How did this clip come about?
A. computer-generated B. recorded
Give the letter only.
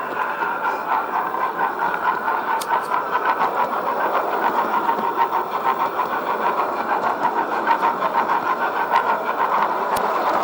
B